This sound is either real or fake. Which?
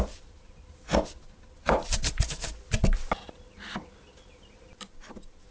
real